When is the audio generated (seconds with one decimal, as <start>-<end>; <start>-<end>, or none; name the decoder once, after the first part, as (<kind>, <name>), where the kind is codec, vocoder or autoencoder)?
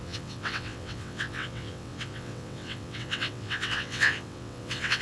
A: 0.0-5.0 (vocoder, WaveNeXt)